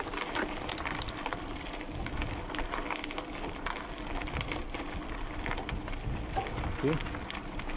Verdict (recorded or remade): recorded